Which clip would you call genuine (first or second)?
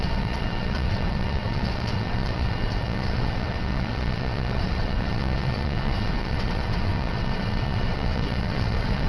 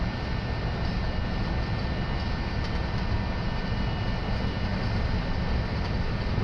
second